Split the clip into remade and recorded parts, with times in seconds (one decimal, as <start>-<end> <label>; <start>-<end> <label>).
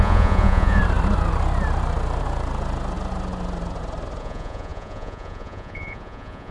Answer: 0.0-0.8 remade; 0.8-4.2 recorded; 4.2-6.5 remade